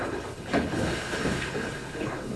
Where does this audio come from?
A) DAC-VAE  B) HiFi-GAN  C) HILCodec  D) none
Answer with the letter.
C